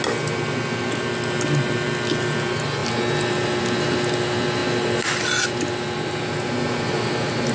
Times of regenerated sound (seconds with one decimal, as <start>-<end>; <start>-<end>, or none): none